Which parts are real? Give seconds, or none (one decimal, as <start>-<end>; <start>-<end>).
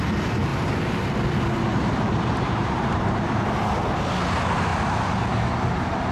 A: 0.0-0.5; 1.1-1.7; 3.5-6.1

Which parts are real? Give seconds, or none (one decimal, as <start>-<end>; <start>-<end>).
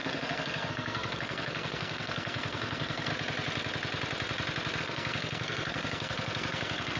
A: 3.1-4.8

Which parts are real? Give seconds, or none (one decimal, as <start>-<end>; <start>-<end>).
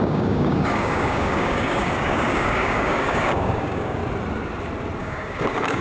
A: 4.0-5.0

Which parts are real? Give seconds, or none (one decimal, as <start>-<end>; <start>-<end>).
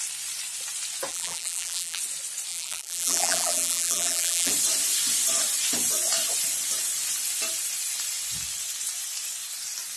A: 0.0-1.1; 2.0-2.5; 4.5-10.0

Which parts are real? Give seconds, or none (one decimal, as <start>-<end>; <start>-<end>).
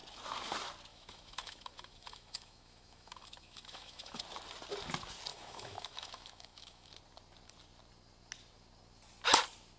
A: 0.0-0.9; 4.2-5.3; 6.9-9.8